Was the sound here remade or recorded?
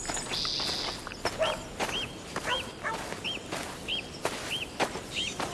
recorded